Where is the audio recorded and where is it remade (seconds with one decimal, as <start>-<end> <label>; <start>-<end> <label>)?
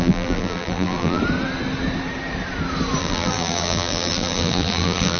0.0-1.2 remade; 1.2-3.0 recorded; 3.0-5.2 remade